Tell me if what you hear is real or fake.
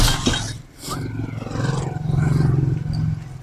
real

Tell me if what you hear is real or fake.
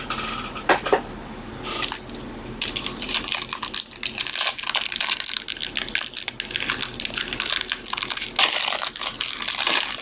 real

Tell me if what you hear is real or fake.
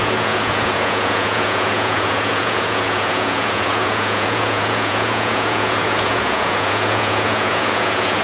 fake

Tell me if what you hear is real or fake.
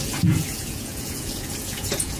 fake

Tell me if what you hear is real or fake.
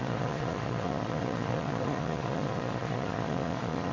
fake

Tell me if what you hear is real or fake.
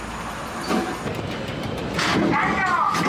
real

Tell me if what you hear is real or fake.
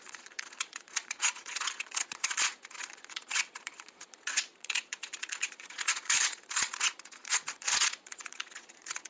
fake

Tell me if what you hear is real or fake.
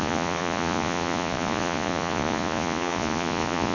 fake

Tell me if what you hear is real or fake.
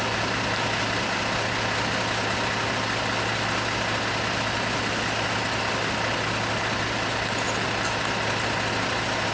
real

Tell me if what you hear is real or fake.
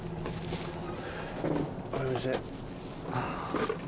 real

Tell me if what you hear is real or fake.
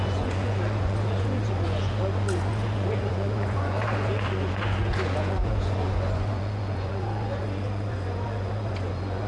fake